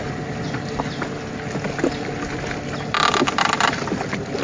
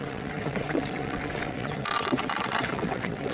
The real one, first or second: first